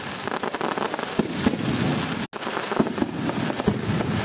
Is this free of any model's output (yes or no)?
yes